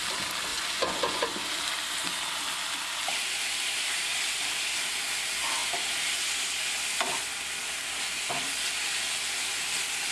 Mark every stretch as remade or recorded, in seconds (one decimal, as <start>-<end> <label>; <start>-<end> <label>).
0.0-0.5 recorded; 0.5-1.3 remade; 1.3-10.1 recorded